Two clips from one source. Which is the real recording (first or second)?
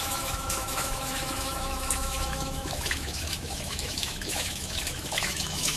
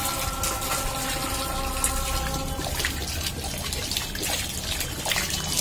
second